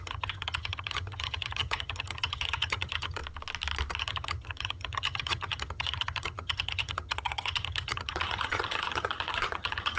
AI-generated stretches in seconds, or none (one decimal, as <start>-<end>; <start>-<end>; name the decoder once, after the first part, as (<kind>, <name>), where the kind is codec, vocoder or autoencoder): 0.0-3.2 (vocoder, HiFi-GAN); 4.0-10.0